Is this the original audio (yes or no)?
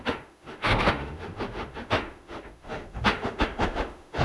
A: no